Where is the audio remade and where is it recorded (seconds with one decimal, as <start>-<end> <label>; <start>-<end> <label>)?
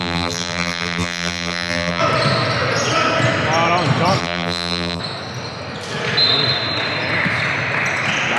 0.0-2.0 remade; 2.0-4.2 recorded; 4.2-5.0 remade; 5.0-8.4 recorded